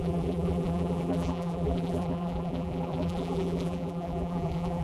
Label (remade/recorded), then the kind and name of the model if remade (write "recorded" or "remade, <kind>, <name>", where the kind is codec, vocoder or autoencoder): remade, vocoder, BigVGAN v2